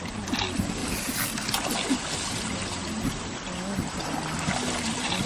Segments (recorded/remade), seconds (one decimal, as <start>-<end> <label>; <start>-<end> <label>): 0.0-5.3 recorded